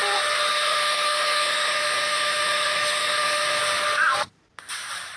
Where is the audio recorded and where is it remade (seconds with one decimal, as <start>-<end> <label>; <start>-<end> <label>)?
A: 0.0-0.5 recorded; 0.5-3.6 remade; 3.6-5.2 recorded